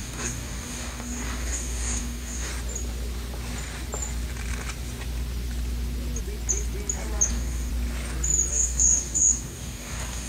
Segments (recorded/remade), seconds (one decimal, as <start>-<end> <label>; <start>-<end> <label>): 0.0-2.5 remade; 2.5-7.3 recorded; 7.3-7.7 remade; 7.7-8.5 recorded; 8.5-10.3 remade